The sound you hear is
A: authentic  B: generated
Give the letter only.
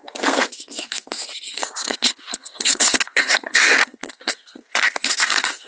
B